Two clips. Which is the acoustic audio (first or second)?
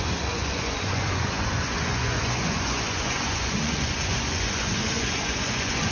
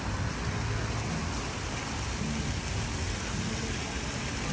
second